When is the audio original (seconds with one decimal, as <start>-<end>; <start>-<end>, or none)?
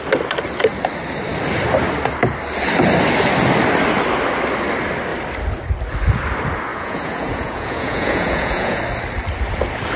0.0-6.7; 8.8-10.0